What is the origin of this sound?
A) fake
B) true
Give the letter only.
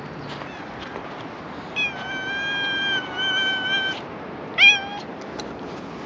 B